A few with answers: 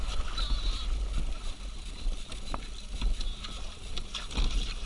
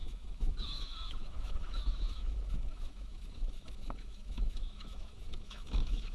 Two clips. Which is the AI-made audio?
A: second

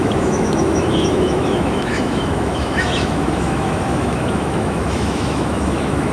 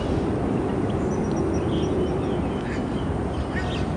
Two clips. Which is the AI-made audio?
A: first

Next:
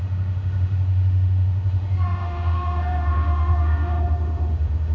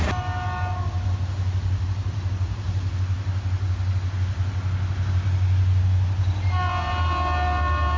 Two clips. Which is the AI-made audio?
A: first